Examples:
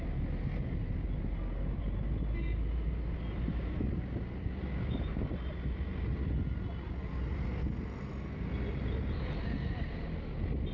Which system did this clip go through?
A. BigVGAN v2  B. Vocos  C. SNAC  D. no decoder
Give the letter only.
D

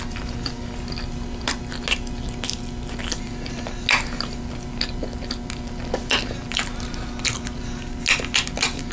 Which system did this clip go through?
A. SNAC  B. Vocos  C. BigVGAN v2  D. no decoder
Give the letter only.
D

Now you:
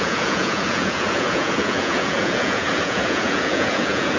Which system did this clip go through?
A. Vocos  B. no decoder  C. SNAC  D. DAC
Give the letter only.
A